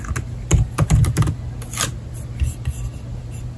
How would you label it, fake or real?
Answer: real